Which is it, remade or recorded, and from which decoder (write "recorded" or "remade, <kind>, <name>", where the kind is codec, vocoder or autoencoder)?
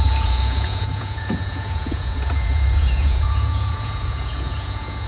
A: remade, vocoder, Vocos